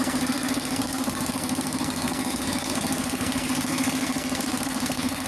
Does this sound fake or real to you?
fake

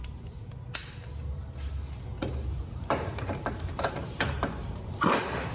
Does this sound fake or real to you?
fake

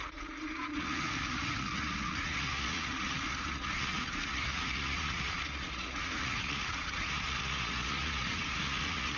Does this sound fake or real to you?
fake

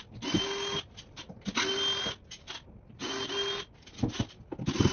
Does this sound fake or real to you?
real